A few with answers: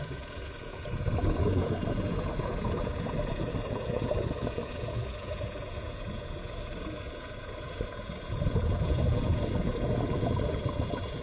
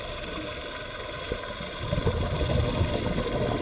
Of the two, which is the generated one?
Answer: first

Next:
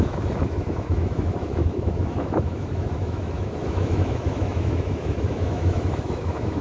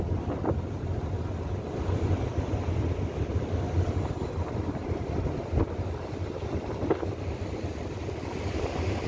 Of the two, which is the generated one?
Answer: first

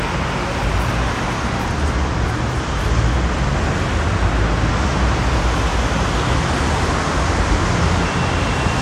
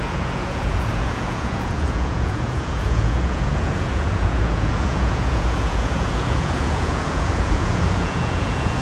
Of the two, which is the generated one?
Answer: second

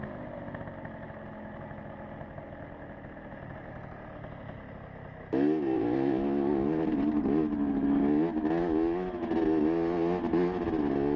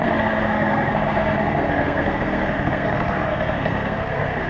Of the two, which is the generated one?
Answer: second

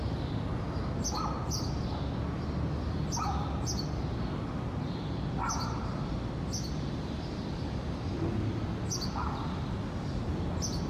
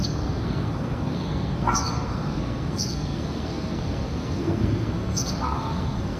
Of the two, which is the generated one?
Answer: second